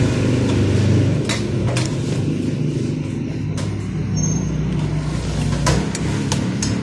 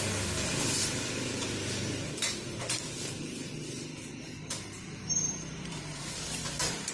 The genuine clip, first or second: first